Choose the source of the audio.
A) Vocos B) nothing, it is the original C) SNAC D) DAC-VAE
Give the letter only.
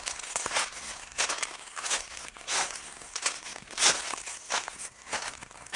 C